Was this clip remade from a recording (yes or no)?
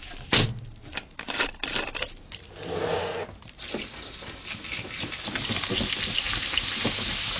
no